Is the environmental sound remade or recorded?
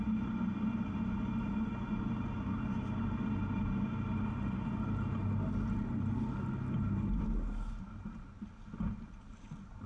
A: recorded